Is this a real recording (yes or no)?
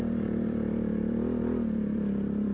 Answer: no